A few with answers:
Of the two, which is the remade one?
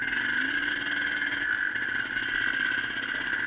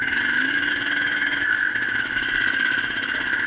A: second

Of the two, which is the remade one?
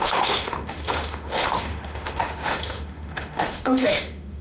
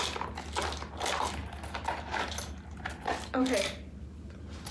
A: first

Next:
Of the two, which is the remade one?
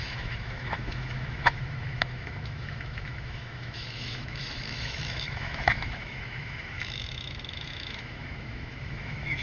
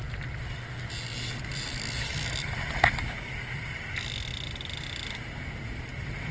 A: first